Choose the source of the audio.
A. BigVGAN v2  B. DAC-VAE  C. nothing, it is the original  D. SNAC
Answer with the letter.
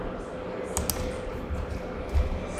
C